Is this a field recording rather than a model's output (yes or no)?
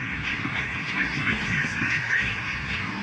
no